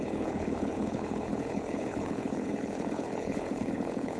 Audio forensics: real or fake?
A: fake